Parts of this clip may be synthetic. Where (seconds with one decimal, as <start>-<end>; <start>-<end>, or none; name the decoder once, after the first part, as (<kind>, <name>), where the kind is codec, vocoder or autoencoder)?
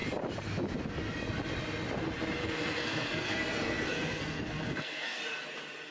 2.4-5.2 (codec, SNAC)